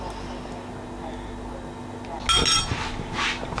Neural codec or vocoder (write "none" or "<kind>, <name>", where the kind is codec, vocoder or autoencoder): none